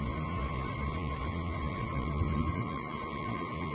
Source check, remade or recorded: remade